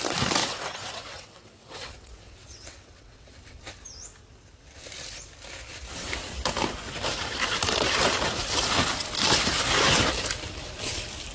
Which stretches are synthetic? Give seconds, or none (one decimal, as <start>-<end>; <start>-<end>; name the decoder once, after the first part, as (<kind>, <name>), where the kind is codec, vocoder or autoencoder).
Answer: 0.4-3.6 (vocoder, WaveNeXt)

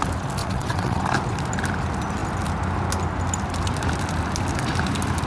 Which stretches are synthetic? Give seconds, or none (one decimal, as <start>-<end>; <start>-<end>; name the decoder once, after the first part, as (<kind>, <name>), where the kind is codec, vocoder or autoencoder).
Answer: 0.4-1.0 (vocoder, WaveNeXt)

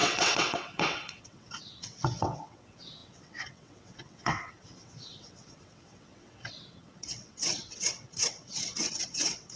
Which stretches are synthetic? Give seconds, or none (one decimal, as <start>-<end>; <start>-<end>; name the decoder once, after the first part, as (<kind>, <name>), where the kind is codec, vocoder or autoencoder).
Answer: 0.0-9.6 (vocoder, WaveNeXt)